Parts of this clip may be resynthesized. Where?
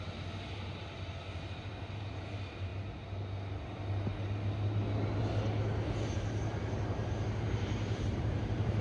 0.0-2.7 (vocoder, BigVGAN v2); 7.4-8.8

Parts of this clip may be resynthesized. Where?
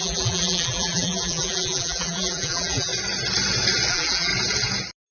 0.0-2.9 (vocoder, BigVGAN v2); 3.9-4.3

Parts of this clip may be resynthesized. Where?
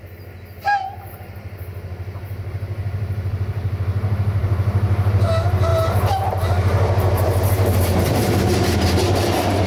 none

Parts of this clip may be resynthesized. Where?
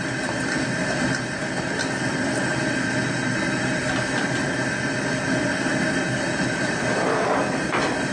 0.0-1.4 (vocoder, BigVGAN v2); 2.1-2.5; 5.2-5.7; 6.3-8.1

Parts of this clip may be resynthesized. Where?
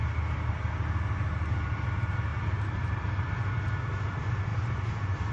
2.3-3.2 (vocoder, BigVGAN v2); 4.5-5.3